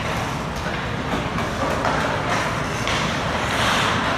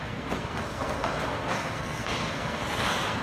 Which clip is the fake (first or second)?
second